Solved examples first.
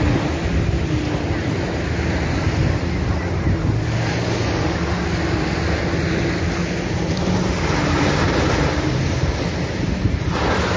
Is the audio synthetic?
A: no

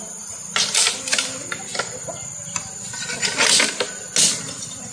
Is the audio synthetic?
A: no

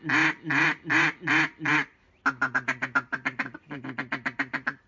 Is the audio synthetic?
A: no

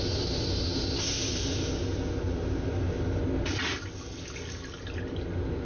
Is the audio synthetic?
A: no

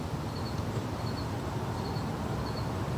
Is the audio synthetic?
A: no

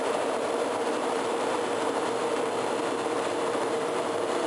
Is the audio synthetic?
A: yes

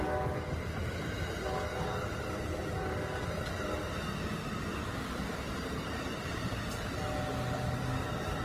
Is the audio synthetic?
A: no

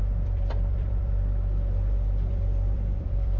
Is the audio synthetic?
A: yes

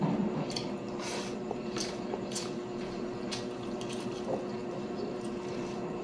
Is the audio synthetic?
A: yes